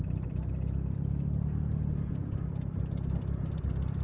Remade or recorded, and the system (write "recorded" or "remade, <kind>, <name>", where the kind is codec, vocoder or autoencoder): recorded